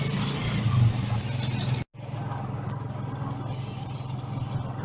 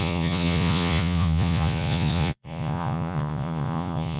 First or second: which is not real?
second